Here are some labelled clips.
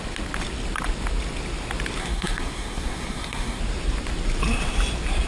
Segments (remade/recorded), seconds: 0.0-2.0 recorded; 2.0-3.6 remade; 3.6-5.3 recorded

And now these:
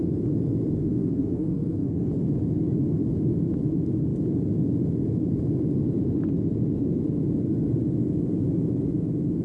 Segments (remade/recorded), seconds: 0.0-0.8 recorded; 0.8-2.1 remade; 2.1-9.4 recorded